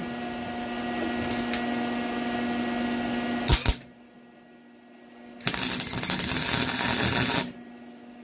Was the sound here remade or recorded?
recorded